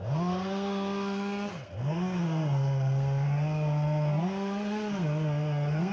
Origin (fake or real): fake